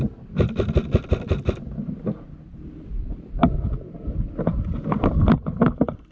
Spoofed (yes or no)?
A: no